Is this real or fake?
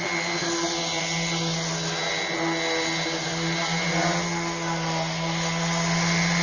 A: real